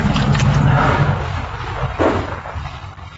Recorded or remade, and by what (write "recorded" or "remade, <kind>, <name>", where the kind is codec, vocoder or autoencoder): recorded